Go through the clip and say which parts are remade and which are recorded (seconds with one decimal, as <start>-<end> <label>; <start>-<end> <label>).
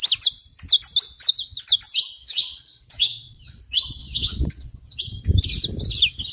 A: 0.0-2.2 recorded; 2.2-3.6 remade; 3.6-4.0 recorded; 4.0-5.0 remade; 5.0-6.3 recorded